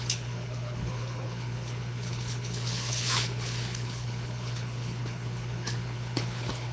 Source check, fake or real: fake